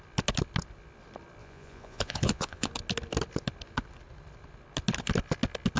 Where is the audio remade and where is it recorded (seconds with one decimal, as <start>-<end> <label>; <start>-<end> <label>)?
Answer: 0.0-1.4 recorded; 1.4-2.7 remade; 2.7-5.8 recorded